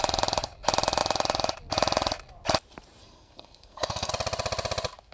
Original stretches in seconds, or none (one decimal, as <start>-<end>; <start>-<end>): 0.0-3.0; 4.1-5.1